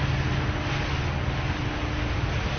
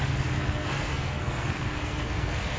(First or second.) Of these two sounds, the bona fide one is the first